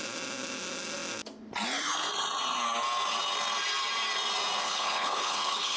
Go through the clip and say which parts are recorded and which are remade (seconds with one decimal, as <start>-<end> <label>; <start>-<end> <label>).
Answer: 0.0-4.6 recorded; 4.6-5.8 remade